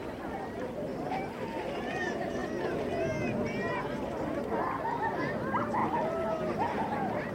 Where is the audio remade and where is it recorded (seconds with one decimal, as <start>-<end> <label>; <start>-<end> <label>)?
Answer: 0.0-0.9 remade; 0.9-1.7 recorded; 1.7-2.4 remade; 2.4-3.0 recorded; 3.0-7.3 remade